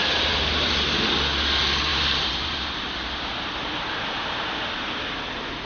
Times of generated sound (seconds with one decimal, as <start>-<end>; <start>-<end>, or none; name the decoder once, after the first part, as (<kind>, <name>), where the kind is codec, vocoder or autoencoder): 0.0-0.7 (vocoder, BigVGAN v2); 1.9-5.3